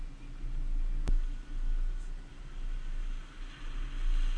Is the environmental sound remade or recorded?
recorded